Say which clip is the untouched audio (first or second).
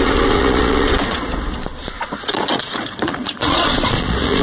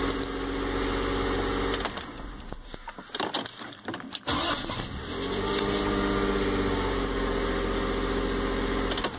second